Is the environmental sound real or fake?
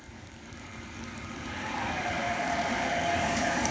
fake